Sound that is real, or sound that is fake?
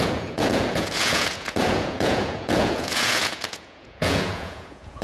fake